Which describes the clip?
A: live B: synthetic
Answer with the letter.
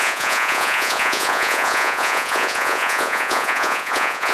B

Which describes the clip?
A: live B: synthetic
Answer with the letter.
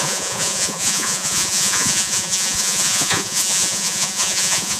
B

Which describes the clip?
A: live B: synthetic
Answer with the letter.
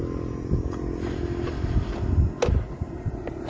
A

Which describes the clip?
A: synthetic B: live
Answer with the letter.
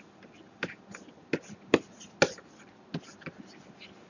B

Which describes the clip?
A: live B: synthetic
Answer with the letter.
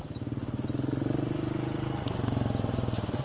A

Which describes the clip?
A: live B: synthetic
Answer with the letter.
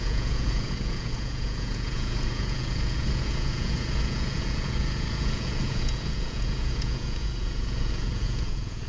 B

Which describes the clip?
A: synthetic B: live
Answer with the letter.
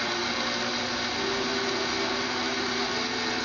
B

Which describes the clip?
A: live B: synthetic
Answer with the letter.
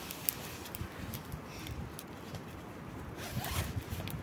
A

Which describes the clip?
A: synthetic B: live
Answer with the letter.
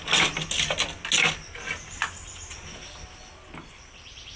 B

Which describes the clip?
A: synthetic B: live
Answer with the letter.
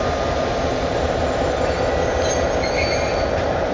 B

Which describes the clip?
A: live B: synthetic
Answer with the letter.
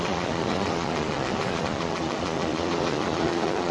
B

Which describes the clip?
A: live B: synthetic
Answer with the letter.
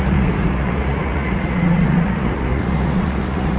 B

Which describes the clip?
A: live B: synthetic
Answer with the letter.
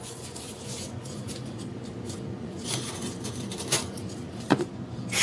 B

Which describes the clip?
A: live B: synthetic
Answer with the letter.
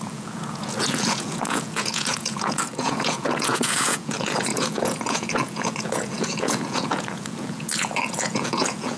B